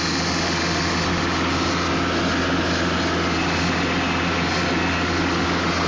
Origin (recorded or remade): recorded